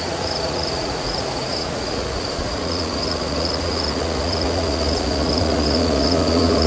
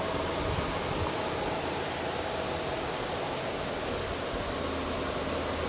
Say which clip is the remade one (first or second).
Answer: first